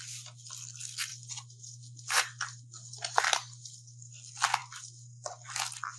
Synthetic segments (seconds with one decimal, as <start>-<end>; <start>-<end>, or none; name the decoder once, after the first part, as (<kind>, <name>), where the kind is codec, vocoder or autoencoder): none